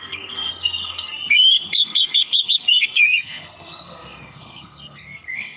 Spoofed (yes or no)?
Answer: yes